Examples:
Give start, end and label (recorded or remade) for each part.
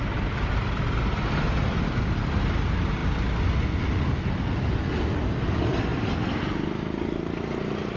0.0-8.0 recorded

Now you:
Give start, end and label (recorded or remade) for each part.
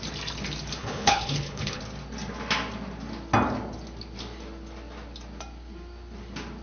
0.0-0.8 recorded; 0.8-1.8 remade; 1.8-6.6 recorded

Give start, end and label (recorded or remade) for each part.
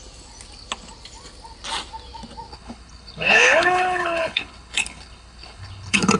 0.0-2.5 recorded; 2.5-6.2 remade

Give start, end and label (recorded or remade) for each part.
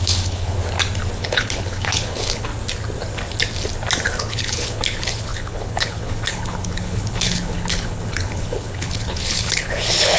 0.0-0.6 remade; 0.6-1.2 recorded; 1.2-2.5 remade; 2.5-4.2 recorded; 4.2-10.2 remade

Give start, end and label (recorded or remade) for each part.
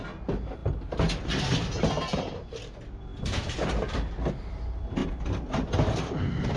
0.0-6.6 recorded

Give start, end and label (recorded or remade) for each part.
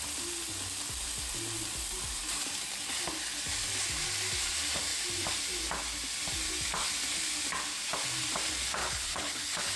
0.0-8.8 recorded; 8.8-9.8 remade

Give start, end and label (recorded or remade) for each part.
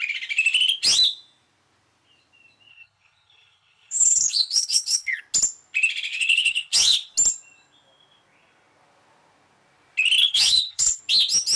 0.0-2.7 recorded; 2.7-5.2 remade; 5.2-6.1 recorded; 6.1-7.1 remade; 7.1-10.2 recorded; 10.2-11.0 remade; 11.0-11.6 recorded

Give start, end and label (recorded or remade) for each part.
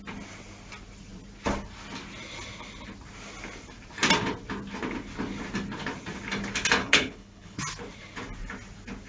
0.0-6.8 recorded; 6.8-7.6 remade; 7.6-9.1 recorded